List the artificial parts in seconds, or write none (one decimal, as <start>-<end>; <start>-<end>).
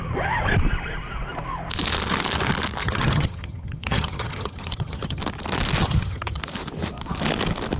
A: 2.8-5.2; 5.8-6.4